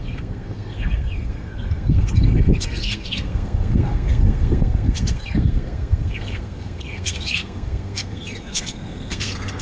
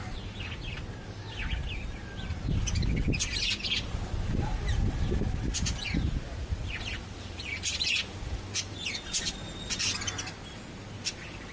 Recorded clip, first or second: second